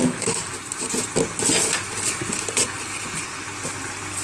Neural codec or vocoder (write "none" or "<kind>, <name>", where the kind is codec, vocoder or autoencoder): none